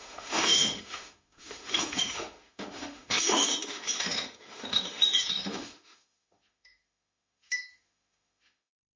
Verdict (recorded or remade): remade